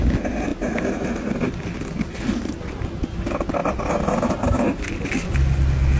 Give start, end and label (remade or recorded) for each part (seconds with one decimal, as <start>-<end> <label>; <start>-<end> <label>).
0.0-6.0 recorded